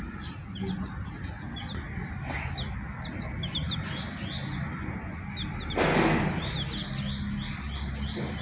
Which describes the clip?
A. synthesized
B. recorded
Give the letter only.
B